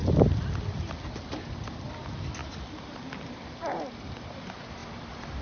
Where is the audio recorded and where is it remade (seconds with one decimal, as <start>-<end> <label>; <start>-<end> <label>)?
0.0-5.4 recorded